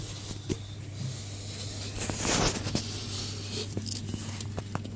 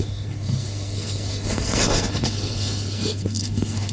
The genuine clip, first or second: first